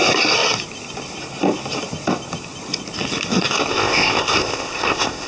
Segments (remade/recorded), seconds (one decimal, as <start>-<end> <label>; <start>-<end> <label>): 0.0-3.7 recorded; 3.7-5.3 remade